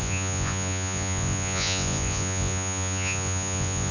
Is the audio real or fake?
fake